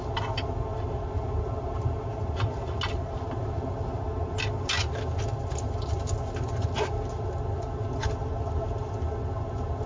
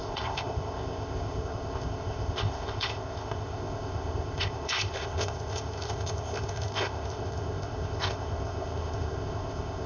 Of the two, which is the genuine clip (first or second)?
first